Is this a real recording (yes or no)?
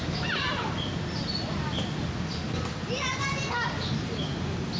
yes